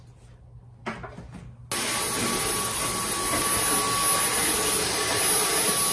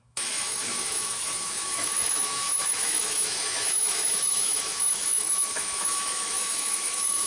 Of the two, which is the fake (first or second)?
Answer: second